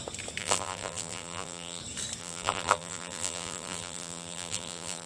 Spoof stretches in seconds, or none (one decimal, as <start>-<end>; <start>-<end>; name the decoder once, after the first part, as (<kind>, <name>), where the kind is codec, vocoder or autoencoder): 0.4-1.8 (vocoder, BigVGAN v2); 2.2-5.1